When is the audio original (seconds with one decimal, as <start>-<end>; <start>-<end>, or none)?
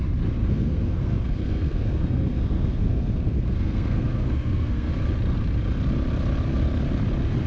0.0-0.4; 4.9-7.5